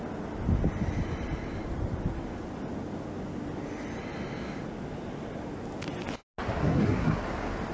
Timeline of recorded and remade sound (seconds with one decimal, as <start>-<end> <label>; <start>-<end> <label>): 0.0-6.6 recorded; 6.6-7.2 remade; 7.2-7.7 recorded